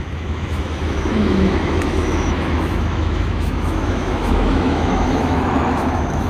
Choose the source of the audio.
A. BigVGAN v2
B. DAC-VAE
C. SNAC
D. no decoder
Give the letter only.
B